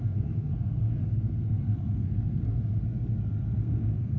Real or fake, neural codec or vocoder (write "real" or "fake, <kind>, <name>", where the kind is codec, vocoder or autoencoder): fake, codec, SNAC